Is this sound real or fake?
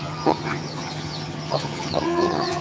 fake